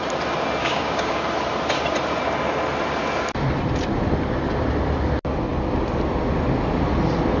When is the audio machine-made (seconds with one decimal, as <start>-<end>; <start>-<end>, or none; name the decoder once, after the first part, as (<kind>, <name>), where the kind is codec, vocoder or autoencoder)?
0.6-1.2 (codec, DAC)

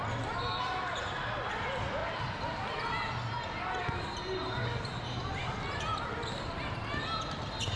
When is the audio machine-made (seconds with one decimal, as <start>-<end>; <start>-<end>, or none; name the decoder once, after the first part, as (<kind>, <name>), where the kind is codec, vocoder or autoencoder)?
none

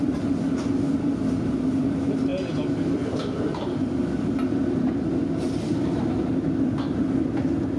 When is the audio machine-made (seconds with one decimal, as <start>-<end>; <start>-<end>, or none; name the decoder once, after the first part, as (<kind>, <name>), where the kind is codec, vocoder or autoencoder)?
0.0-7.8 (vocoder, BigVGAN v2)

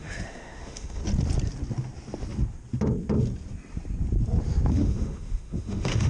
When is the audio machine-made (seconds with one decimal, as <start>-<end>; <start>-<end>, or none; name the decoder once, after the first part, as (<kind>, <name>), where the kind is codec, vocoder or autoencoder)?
0.0-1.0 (autoencoder, DAC-VAE); 4.7-6.1

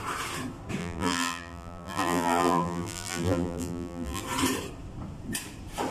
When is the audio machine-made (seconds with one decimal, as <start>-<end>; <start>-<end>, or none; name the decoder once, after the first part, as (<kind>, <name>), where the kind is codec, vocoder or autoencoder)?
0.8-4.2 (vocoder, BigVGAN v2)

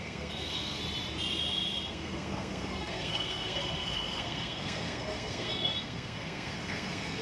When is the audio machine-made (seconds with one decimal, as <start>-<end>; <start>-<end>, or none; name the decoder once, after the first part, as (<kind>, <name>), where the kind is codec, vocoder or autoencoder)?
0.0-0.8 (codec, SNAC); 1.9-7.2

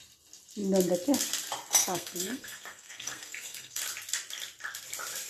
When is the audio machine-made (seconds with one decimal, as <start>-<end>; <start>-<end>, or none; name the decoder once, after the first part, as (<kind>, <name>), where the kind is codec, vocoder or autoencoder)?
1.8-3.8 (codec, SNAC)